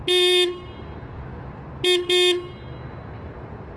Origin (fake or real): real